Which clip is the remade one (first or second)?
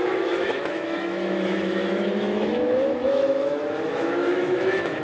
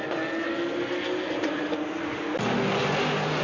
first